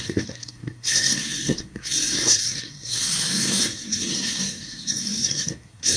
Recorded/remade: remade